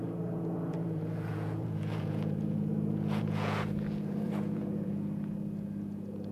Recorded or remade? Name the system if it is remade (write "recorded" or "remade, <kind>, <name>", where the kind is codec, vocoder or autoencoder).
remade, vocoder, Vocos